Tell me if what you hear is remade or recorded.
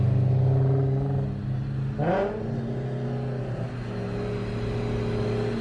recorded